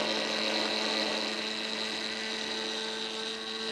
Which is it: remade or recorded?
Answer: recorded